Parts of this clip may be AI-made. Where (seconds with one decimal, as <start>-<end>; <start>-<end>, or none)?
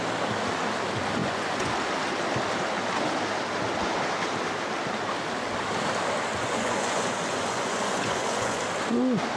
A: 1.2-1.7; 6.3-8.6